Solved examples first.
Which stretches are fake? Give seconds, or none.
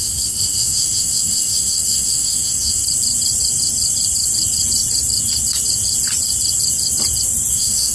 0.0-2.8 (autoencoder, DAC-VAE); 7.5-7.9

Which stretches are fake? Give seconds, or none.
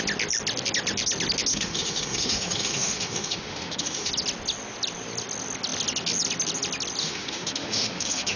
1.5-4.1 (autoencoder, DAC-VAE); 7.0-8.4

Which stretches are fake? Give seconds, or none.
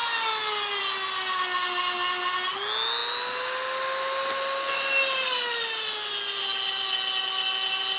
none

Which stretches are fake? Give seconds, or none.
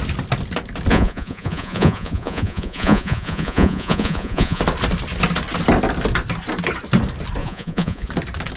0.9-4.6 (vocoder, Vocos); 7.4-8.1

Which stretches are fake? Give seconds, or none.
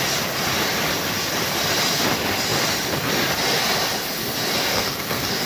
4.7-5.5 (codec, SNAC)